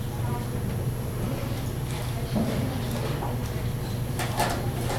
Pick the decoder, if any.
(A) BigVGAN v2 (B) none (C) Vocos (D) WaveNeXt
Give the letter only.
B